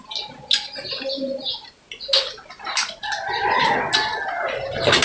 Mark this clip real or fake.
real